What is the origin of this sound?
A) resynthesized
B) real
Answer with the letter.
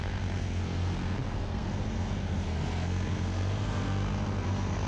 A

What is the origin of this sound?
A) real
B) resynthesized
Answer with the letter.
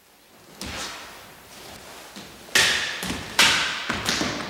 A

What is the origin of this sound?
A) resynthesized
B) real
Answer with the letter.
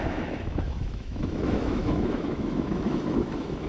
A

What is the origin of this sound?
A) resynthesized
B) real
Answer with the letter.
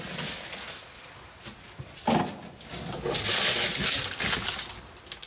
B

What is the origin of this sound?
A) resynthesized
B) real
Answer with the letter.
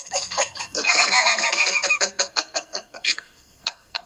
A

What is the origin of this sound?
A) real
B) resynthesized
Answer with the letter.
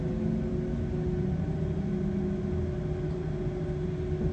A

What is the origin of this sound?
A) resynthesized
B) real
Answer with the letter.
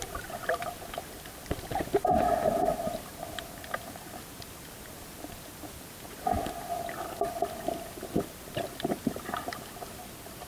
B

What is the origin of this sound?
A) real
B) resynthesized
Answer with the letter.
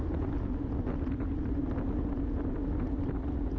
A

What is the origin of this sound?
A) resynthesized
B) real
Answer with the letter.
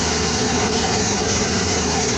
A